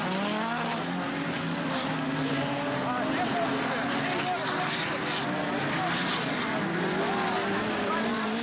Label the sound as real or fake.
real